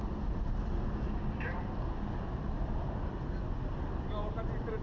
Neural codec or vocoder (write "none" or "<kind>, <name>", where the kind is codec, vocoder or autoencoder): none